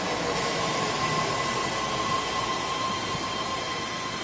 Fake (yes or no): no